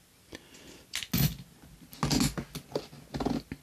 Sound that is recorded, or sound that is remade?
recorded